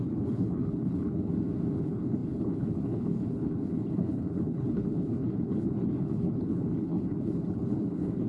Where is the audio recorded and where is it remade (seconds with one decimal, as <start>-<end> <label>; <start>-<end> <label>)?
0.0-1.3 remade; 1.3-1.8 recorded; 1.8-8.3 remade